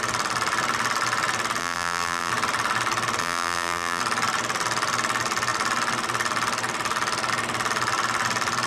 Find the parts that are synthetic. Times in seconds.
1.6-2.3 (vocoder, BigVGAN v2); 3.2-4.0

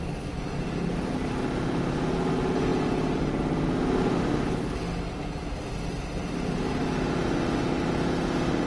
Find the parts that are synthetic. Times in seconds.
none

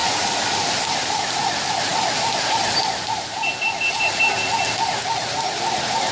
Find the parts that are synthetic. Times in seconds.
none

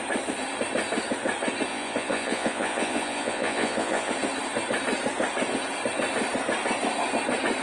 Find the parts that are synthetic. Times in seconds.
1.7-4.1 (vocoder, Vocos)

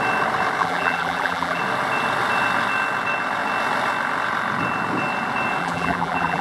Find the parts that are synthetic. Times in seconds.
0.6-1.6 (vocoder, BigVGAN v2); 5.6-6.4

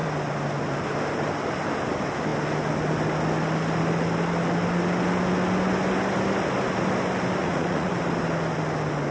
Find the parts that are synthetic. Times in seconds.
7.4-7.9 (vocoder, Vocos)

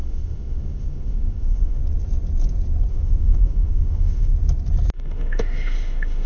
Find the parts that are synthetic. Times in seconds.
0.0-1.8 (autoencoder, DAC-VAE); 2.9-4.3; 4.9-6.3